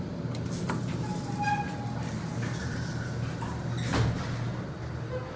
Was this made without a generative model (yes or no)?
yes